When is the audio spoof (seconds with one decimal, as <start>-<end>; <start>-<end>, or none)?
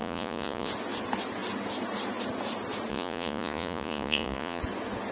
0.0-0.7; 2.9-4.6